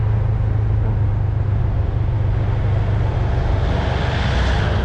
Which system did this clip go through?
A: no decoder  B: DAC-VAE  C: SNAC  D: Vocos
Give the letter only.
A